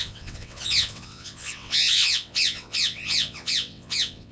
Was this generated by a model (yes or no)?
yes